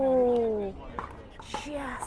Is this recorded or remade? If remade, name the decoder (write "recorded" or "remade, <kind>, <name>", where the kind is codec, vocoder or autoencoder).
recorded